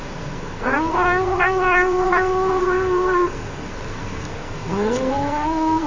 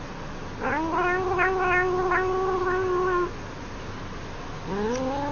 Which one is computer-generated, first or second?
first